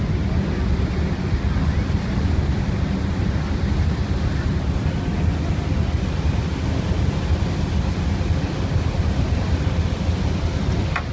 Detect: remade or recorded recorded